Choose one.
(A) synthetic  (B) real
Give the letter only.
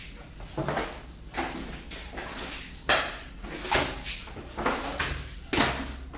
B